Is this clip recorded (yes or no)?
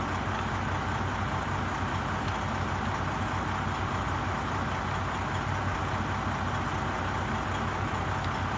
yes